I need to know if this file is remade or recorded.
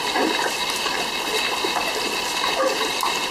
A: recorded